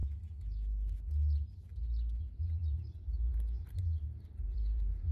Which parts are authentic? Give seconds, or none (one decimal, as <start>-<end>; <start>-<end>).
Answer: 0.0-2.2